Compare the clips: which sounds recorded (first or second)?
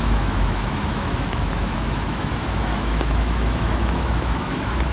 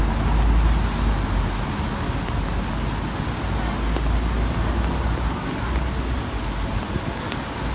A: second